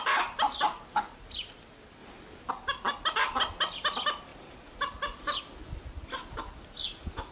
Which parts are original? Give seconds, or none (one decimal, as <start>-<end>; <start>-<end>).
0.0-7.3